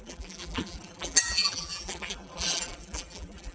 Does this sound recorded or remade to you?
remade